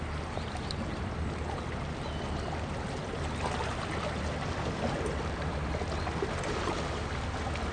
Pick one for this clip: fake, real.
real